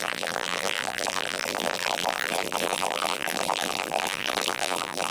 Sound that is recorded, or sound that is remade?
remade